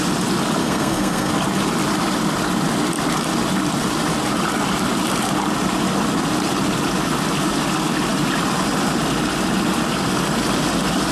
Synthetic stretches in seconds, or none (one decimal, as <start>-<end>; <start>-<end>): 0.6-1.3